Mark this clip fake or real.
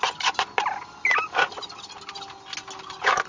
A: real